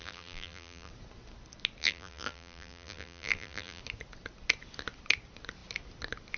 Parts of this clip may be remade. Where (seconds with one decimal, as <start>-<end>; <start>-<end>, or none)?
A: 0.0-0.9; 1.8-3.8